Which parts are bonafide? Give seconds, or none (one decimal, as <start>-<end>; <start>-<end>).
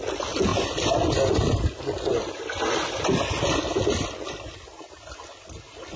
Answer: 0.0-6.0